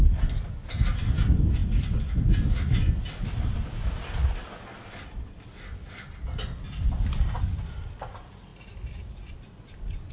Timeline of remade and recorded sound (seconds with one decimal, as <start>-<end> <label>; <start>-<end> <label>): 0.0-10.1 recorded